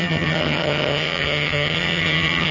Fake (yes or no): yes